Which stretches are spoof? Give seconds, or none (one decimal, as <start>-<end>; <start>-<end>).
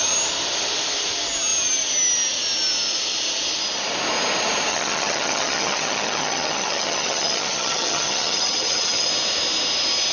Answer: 4.7-9.1